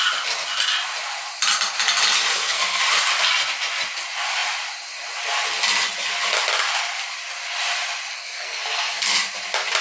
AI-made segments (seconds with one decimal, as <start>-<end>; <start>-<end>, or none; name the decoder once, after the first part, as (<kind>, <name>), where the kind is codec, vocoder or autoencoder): 2.3-2.8 (codec, SNAC); 8.1-9.2